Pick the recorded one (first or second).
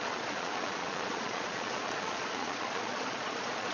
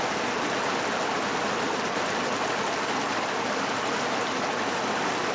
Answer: second